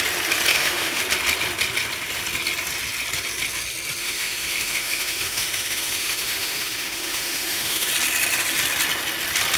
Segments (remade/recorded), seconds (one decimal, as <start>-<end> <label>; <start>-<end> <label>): 0.0-0.5 recorded; 0.5-1.0 remade; 1.0-4.0 recorded; 4.0-7.9 remade; 7.9-9.6 recorded